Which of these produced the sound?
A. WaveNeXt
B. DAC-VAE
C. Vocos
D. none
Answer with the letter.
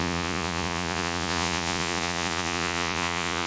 C